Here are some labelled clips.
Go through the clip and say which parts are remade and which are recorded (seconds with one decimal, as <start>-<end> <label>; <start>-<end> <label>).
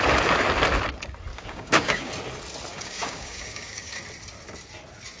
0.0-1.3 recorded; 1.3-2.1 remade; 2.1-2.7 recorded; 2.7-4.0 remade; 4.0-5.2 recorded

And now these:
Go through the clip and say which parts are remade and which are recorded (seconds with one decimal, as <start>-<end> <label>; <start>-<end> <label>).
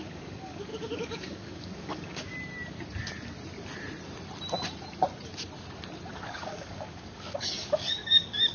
0.0-2.3 remade; 2.3-6.1 recorded; 6.1-8.5 remade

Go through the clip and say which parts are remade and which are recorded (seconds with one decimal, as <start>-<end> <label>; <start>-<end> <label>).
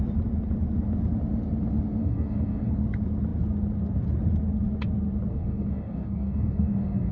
0.0-2.0 recorded; 2.0-2.7 remade; 2.7-5.3 recorded; 5.3-7.1 remade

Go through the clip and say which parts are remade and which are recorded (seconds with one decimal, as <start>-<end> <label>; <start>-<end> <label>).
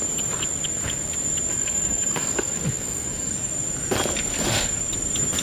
0.0-1.5 recorded; 1.5-3.5 remade; 3.5-5.4 recorded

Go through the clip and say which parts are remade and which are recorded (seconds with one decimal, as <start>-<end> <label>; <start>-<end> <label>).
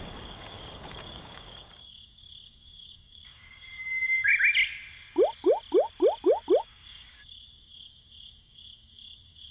0.0-4.3 remade; 4.3-6.6 recorded; 6.6-9.5 remade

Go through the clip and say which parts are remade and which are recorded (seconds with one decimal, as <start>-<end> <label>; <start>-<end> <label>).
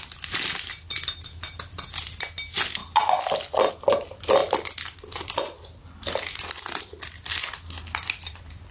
0.0-8.7 recorded